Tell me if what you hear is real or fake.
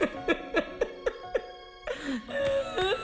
real